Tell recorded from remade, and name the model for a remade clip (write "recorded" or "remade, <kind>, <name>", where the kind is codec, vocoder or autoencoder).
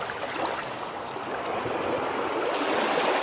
recorded